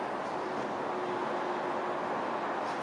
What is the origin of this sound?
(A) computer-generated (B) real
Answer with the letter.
B